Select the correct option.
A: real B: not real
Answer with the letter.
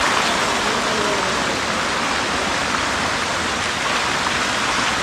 A